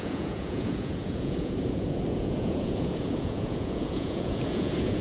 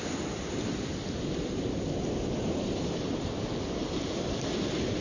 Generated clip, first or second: first